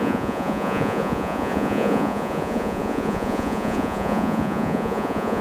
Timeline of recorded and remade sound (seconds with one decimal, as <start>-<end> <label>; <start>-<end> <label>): 0.0-5.4 remade